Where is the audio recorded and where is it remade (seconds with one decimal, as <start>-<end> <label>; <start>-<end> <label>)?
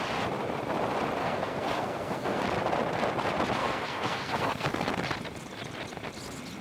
0.0-1.2 recorded; 1.2-2.4 remade; 2.4-3.6 recorded; 3.6-4.9 remade; 4.9-6.6 recorded